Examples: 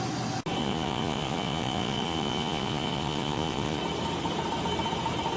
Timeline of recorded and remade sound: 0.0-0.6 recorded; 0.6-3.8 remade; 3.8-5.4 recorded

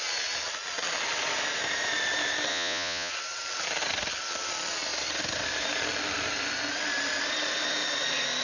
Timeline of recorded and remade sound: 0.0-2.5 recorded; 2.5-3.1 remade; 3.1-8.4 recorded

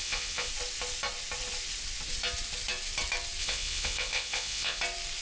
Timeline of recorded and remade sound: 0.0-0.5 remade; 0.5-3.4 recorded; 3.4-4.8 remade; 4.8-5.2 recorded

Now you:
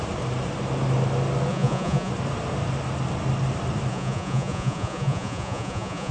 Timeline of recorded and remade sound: 0.0-1.5 recorded; 1.5-2.1 remade; 2.1-3.9 recorded; 3.9-6.1 remade

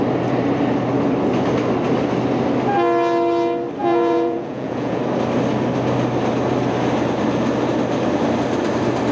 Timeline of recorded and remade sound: 0.0-3.8 recorded; 3.8-5.0 remade; 5.0-9.1 recorded

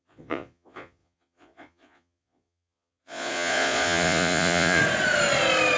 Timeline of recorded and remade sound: 0.0-4.8 remade; 4.8-5.8 recorded

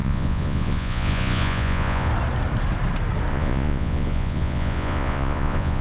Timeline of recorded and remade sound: 0.0-2.1 remade; 2.1-3.3 recorded; 3.3-5.8 remade

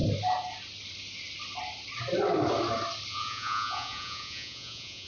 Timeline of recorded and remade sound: 0.0-3.1 recorded; 3.1-5.1 remade